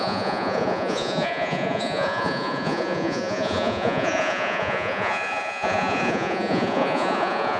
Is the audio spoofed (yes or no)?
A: yes